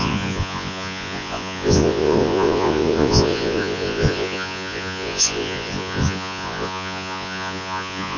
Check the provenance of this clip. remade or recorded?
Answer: remade